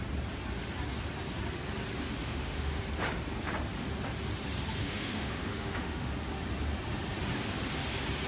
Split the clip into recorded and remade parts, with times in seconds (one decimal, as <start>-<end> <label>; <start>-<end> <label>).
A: 0.0-2.2 recorded; 2.2-2.8 remade; 2.8-4.8 recorded; 4.8-6.1 remade; 6.1-8.3 recorded